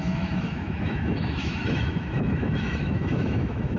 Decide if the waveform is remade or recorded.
remade